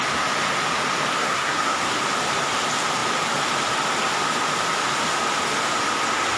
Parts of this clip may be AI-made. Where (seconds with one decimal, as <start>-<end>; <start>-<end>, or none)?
1.2-2.0